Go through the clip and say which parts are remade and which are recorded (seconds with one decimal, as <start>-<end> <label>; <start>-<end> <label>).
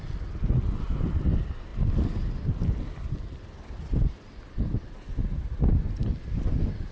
0.0-6.9 recorded